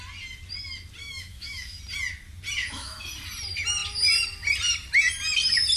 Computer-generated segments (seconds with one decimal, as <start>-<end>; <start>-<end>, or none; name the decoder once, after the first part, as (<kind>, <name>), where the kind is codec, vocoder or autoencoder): 1.0-1.8 (autoencoder, DAC-VAE); 2.6-3.1